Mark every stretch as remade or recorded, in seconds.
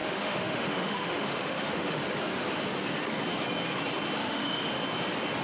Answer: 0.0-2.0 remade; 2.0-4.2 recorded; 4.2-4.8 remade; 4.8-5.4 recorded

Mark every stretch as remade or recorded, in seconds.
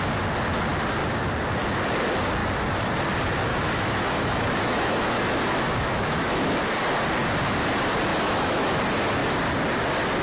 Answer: 0.0-3.5 recorded; 3.5-6.5 remade; 6.5-8.1 recorded; 8.1-8.8 remade; 8.8-10.2 recorded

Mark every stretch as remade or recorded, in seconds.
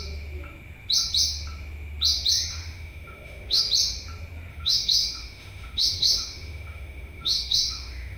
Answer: 0.0-2.5 recorded; 2.5-3.6 remade; 3.6-4.5 recorded; 4.5-8.2 remade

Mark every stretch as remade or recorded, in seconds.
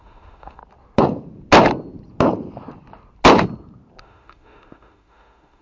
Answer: 0.0-0.6 remade; 0.6-4.0 recorded; 4.0-5.6 remade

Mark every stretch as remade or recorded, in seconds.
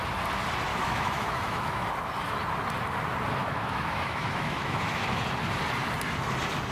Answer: 0.0-0.7 recorded; 0.7-1.9 remade; 1.9-3.4 recorded; 3.4-5.2 remade; 5.2-6.7 recorded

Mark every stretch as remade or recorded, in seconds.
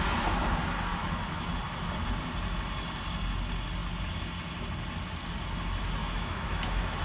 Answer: 0.0-0.9 recorded; 0.9-1.5 remade; 1.5-6.0 recorded; 6.0-7.0 remade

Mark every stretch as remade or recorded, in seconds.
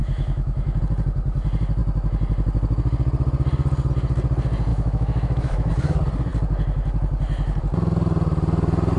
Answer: 0.0-0.8 remade; 0.8-4.7 recorded; 4.7-5.7 remade; 5.7-9.0 recorded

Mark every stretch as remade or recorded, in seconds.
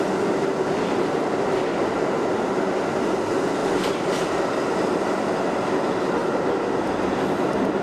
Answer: 0.0-7.8 recorded